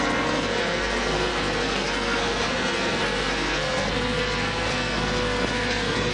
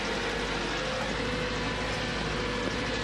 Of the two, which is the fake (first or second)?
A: first